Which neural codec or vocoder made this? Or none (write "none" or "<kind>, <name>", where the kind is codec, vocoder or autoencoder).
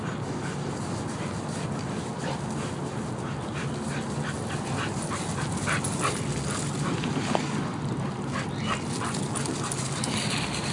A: none